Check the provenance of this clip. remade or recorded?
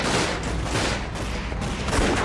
recorded